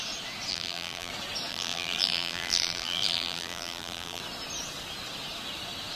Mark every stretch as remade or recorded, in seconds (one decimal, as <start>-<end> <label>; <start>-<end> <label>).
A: 0.0-0.5 recorded; 0.5-1.1 remade; 1.1-1.5 recorded; 1.5-4.2 remade; 4.2-6.0 recorded